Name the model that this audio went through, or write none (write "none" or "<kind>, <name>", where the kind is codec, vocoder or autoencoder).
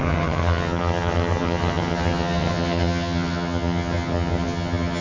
vocoder, HiFi-GAN